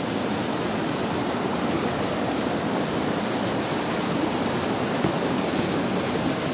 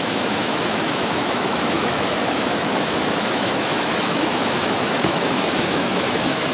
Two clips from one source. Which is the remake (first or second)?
second